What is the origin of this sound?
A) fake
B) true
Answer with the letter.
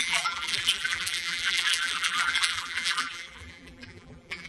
A